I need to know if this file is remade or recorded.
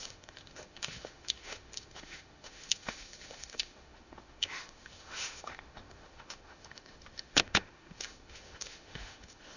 remade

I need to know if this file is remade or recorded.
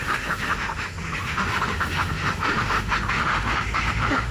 remade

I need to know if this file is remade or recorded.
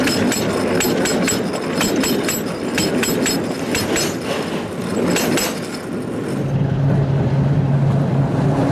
recorded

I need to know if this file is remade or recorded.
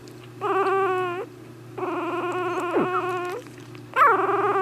recorded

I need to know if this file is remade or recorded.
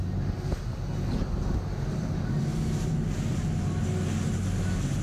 recorded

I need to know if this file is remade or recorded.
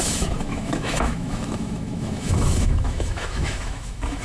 remade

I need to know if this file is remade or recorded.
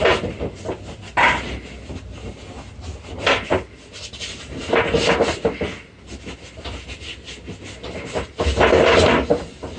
recorded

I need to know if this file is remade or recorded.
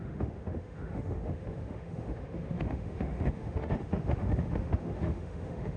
remade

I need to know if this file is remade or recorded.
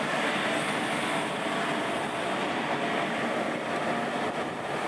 recorded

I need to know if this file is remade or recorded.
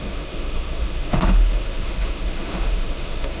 remade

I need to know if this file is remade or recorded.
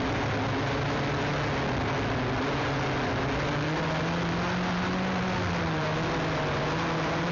recorded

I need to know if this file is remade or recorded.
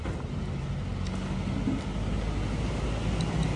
recorded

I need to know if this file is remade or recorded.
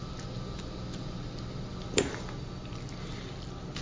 recorded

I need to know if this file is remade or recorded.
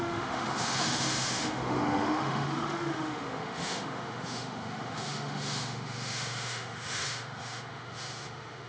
remade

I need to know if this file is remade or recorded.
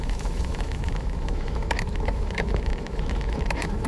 remade